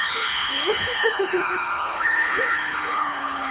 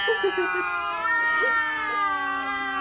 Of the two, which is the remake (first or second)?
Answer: first